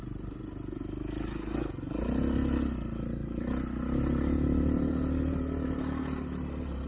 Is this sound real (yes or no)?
yes